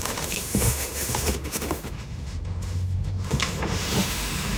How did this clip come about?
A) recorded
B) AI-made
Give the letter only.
B